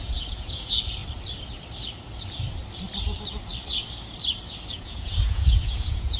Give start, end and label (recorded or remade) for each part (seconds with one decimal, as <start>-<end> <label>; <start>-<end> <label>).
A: 0.0-1.0 remade; 1.0-4.7 recorded; 4.7-6.2 remade